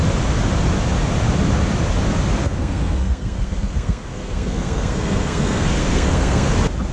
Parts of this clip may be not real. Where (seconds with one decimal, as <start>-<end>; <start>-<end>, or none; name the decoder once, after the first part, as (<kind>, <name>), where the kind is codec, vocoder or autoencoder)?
2.4-6.5 (codec, SNAC)